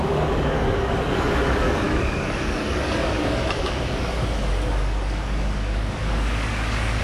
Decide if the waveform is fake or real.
fake